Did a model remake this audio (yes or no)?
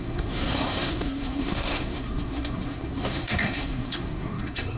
yes